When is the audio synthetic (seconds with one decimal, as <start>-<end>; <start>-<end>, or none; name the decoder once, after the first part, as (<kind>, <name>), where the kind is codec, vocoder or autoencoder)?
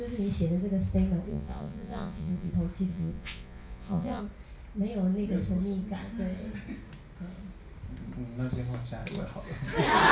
1.3-2.5 (vocoder, Vocos); 2.9-4.2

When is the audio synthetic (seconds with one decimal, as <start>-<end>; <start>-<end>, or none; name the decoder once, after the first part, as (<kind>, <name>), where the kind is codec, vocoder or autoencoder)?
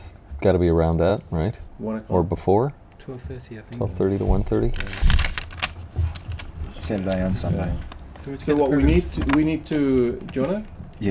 none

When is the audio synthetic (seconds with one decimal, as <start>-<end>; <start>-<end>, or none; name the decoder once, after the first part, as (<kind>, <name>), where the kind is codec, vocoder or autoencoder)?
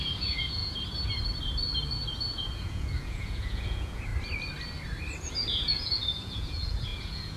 0.0-0.6 (vocoder, Vocos); 2.1-4.1; 5.2-7.4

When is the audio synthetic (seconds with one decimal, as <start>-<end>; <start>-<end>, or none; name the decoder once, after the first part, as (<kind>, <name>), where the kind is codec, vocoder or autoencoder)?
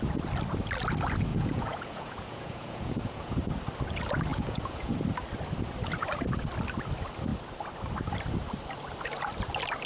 1.3-3.4 (vocoder, Vocos); 4.3-4.9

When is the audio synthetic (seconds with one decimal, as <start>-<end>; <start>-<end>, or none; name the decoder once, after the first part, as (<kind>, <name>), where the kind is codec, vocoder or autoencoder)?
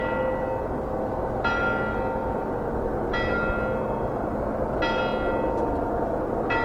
none